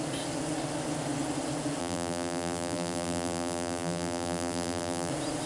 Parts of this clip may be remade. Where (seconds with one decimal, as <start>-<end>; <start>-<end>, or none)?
1.8-5.1